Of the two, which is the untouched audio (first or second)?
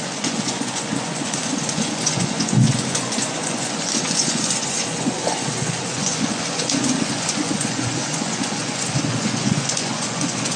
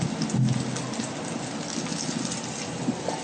second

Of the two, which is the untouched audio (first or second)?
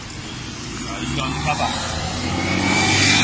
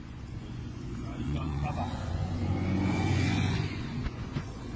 first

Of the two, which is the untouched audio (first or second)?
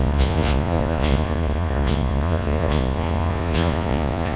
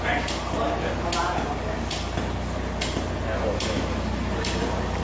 second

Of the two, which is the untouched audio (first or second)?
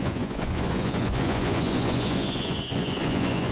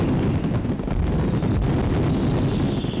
second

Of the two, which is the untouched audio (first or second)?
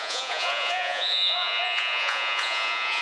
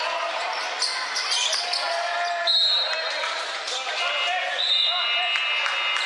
second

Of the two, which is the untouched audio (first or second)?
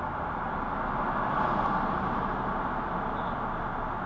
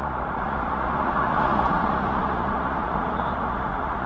first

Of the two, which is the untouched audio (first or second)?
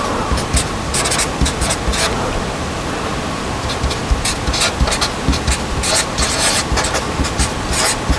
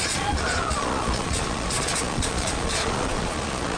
first